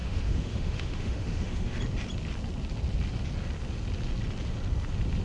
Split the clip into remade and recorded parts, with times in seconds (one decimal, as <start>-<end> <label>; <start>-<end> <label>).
0.0-1.8 remade; 1.8-5.2 recorded

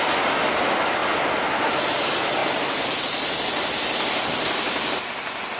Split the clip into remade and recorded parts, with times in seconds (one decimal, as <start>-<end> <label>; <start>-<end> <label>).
0.0-5.6 recorded